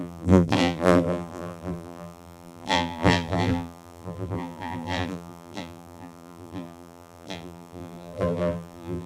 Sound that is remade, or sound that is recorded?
remade